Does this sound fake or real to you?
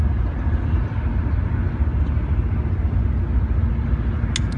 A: real